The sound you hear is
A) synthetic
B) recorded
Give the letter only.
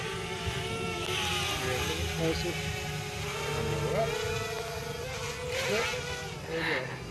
B